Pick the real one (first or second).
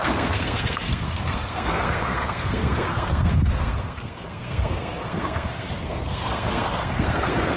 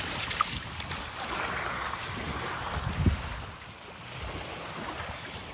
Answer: second